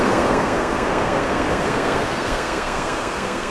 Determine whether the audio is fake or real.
fake